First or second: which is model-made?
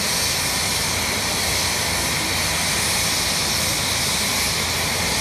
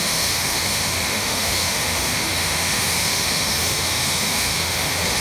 second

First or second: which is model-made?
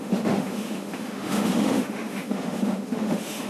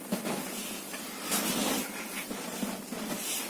first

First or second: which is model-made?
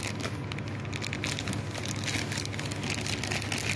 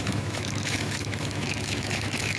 second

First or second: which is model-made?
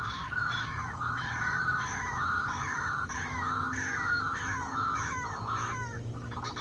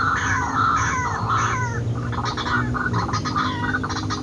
first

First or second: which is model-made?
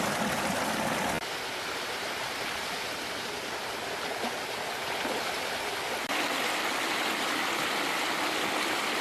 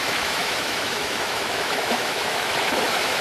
second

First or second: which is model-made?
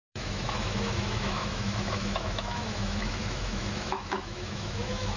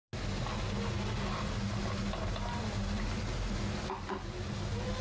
first